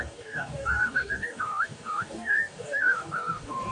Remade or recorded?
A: remade